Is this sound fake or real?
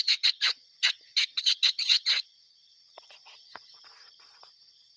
fake